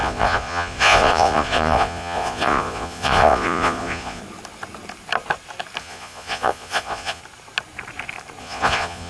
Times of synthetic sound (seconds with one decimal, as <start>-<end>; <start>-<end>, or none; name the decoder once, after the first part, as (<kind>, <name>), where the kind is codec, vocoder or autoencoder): 0.0-4.2 (vocoder, Vocos); 5.8-7.2; 8.4-9.1